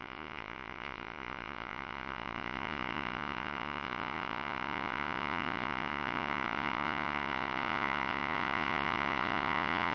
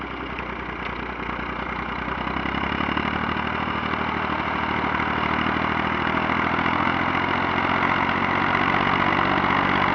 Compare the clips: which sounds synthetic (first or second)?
first